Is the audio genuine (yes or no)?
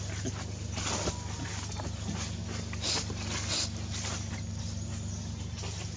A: yes